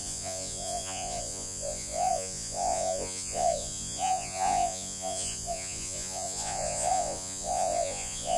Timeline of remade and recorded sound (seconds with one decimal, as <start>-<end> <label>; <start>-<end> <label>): 0.0-8.4 remade